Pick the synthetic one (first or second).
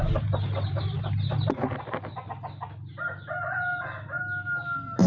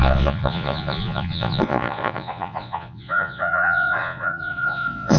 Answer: second